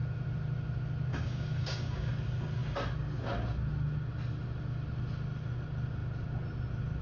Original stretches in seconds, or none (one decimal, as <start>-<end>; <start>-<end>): 0.0-1.1; 2.1-7.0